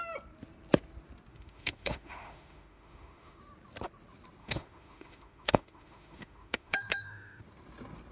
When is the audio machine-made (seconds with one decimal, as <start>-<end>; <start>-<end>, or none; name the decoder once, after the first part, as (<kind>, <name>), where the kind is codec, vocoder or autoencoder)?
1.3-3.4 (autoencoder, DAC-VAE); 4.4-7.4